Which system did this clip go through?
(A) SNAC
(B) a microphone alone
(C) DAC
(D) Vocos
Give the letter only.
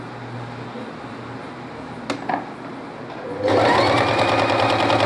B